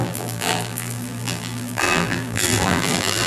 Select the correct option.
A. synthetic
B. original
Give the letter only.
A